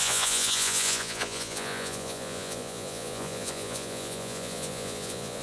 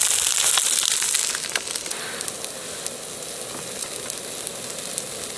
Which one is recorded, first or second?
second